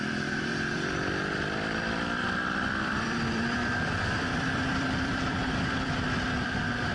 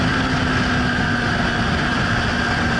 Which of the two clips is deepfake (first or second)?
first